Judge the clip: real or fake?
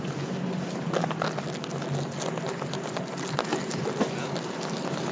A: real